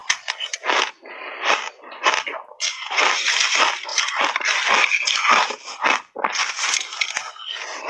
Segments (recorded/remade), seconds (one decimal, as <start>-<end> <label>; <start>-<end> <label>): 0.0-2.7 recorded; 2.7-3.3 remade; 3.3-7.9 recorded